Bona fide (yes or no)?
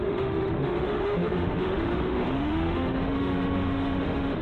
no